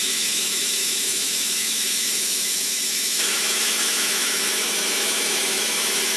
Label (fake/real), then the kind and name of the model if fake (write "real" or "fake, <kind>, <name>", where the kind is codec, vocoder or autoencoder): fake, autoencoder, DAC-VAE